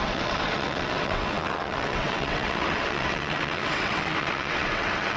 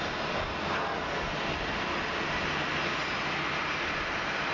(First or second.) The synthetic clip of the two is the first